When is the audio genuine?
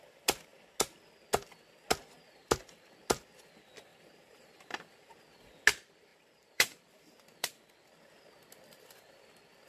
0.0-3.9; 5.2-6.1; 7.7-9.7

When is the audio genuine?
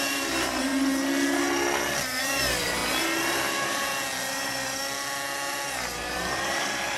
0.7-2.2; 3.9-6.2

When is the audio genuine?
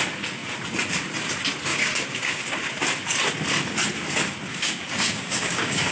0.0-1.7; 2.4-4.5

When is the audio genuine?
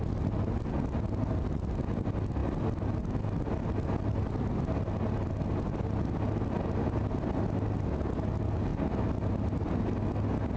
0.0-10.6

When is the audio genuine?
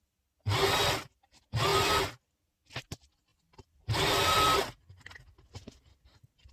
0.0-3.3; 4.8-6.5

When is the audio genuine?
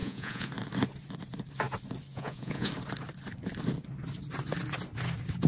0.5-2.1; 2.7-5.5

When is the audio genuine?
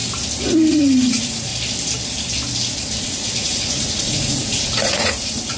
0.0-0.7; 1.5-3.0